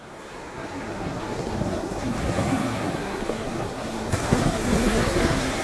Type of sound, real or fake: fake